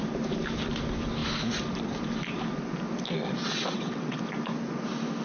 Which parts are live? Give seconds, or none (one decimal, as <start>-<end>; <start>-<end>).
0.0-3.4; 4.2-5.2